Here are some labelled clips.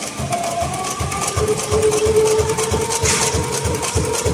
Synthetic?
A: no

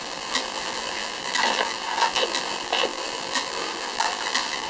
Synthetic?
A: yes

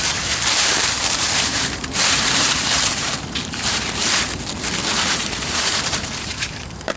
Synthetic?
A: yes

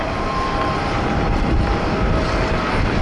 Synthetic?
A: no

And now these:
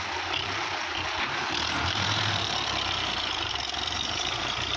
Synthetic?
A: yes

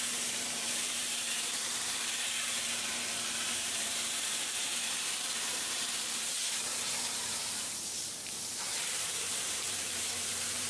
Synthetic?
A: yes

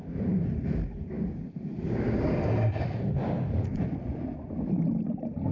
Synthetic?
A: no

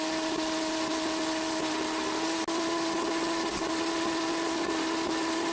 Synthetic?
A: no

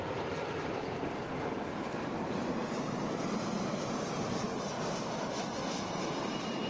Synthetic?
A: yes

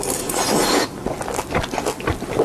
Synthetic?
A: no